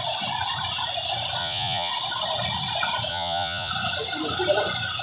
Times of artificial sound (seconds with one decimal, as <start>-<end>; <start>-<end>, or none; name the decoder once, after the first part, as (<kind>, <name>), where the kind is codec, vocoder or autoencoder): 1.4-1.9 (vocoder, Vocos); 3.1-3.7